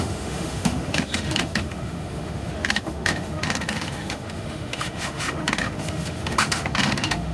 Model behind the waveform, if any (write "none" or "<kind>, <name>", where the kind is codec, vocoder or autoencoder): autoencoder, DAC-VAE